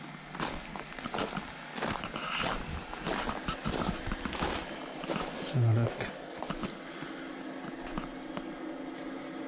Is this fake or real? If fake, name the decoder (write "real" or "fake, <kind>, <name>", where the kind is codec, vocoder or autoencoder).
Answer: real